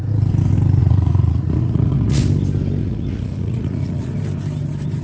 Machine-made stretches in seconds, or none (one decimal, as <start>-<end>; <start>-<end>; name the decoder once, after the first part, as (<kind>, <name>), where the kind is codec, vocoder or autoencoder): 0.8-2.2 (vocoder, Vocos); 2.8-4.1